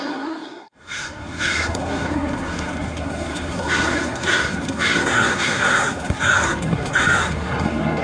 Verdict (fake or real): fake